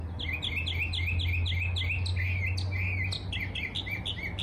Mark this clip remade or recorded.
recorded